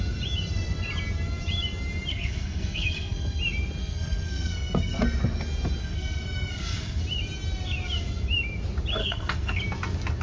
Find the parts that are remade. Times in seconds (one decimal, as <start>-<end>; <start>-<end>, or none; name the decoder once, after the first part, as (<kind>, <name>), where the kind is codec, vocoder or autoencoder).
2.1-3.4 (codec, SNAC); 3.8-5.0; 5.8-7.0; 9.0-9.6